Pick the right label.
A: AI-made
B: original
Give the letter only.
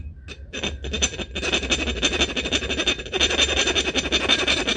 B